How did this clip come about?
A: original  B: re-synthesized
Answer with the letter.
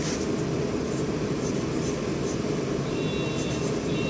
A